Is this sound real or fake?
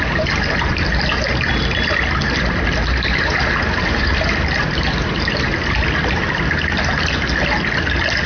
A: real